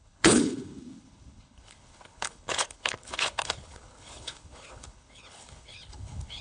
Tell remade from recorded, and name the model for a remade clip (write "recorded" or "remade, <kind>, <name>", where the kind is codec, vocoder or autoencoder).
remade, codec, HILCodec